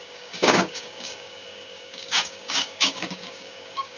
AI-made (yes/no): yes